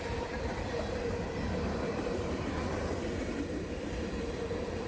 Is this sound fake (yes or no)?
yes